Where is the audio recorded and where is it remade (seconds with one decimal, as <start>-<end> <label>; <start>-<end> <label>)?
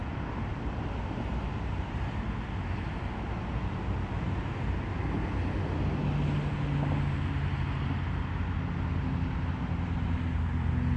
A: 0.0-11.0 recorded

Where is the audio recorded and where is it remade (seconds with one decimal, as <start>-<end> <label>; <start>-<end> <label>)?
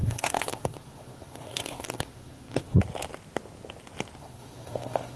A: 0.0-2.8 remade; 2.8-4.2 recorded; 4.2-5.2 remade